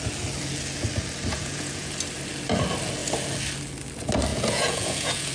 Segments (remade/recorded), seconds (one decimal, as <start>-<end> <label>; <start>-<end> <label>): 0.0-1.3 recorded; 1.3-1.9 remade; 1.9-4.3 recorded; 4.3-5.3 remade